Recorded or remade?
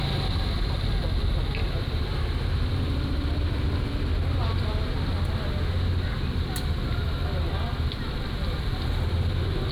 recorded